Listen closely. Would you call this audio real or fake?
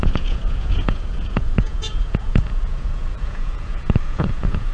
fake